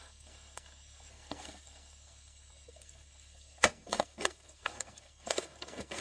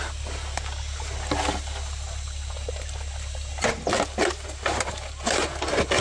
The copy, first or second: first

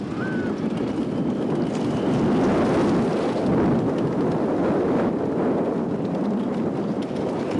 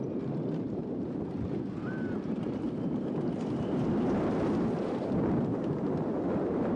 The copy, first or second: second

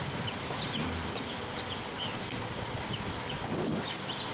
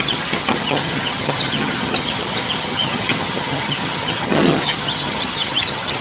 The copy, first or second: second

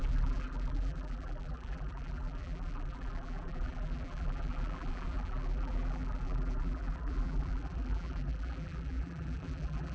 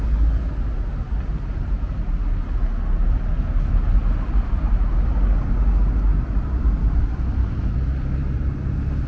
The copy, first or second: first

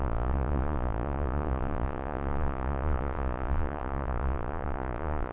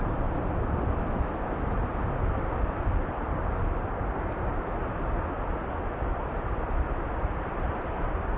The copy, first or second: first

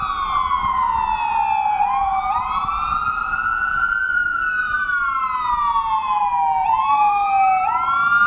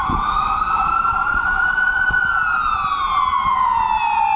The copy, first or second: second